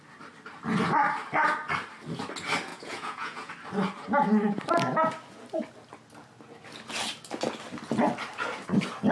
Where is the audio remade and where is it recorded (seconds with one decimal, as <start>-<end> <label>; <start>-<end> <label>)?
0.0-2.7 recorded; 2.7-3.5 remade; 3.5-9.1 recorded